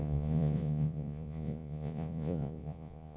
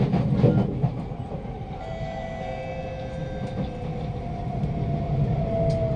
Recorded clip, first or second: second